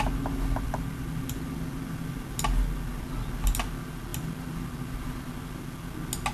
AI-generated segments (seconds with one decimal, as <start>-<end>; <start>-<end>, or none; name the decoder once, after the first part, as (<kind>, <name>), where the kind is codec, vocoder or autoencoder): none